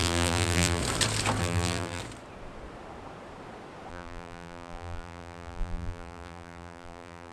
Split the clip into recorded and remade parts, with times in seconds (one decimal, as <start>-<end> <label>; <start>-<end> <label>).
0.0-0.8 remade; 0.8-1.4 recorded; 1.4-2.0 remade; 2.0-3.9 recorded; 3.9-7.3 remade